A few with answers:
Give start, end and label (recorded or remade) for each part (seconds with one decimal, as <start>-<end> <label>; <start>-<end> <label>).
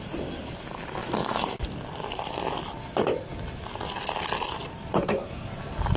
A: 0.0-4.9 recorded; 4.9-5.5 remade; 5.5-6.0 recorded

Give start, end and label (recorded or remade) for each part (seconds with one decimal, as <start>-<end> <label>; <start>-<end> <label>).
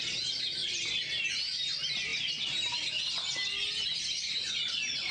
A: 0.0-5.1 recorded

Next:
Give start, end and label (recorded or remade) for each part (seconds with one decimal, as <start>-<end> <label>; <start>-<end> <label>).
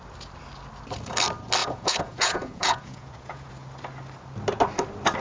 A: 0.0-1.6 recorded; 1.6-3.5 remade; 3.5-5.2 recorded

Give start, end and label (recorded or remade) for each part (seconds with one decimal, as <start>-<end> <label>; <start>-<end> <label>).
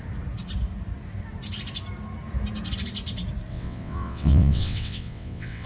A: 0.0-3.5 recorded; 3.5-5.7 remade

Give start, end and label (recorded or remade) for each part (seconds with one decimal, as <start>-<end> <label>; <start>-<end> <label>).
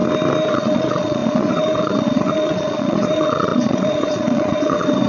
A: 0.0-0.5 recorded; 0.5-5.1 remade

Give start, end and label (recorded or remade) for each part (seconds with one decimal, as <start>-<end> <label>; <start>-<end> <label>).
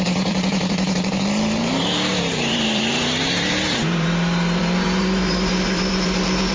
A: 0.0-6.5 remade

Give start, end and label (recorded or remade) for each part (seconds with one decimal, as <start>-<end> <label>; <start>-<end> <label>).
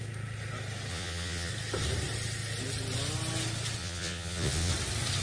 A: 0.0-0.9 recorded; 0.9-1.5 remade; 1.5-3.8 recorded; 3.8-4.7 remade; 4.7-5.2 recorded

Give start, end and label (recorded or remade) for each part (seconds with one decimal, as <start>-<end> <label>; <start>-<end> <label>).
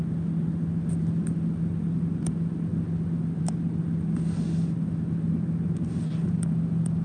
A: 0.0-7.0 recorded